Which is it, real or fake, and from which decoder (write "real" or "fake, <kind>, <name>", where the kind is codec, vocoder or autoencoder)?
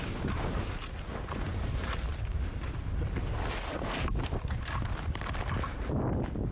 real